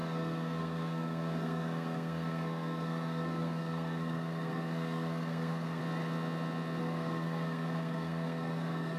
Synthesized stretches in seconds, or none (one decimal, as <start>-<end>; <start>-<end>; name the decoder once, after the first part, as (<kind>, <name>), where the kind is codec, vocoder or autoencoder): 0.0-5.8 (codec, SNAC); 6.8-9.0